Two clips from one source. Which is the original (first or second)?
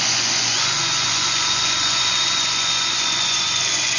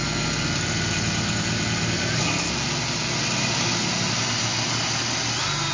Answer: second